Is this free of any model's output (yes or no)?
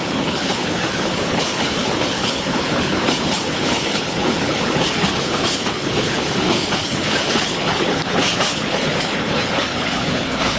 no